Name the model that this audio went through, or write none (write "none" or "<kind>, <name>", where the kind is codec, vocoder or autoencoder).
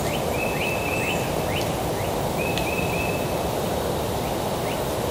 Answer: none